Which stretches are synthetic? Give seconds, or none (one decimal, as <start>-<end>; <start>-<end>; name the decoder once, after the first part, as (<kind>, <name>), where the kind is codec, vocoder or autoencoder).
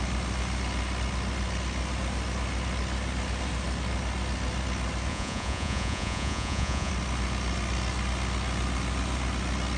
5.1-6.9 (vocoder, Vocos)